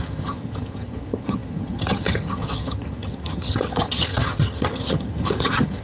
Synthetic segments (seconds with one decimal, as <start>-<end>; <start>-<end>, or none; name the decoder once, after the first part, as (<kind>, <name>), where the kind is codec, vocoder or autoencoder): 0.0-5.8 (vocoder, HiFi-GAN)